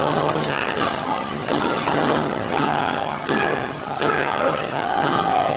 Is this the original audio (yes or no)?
no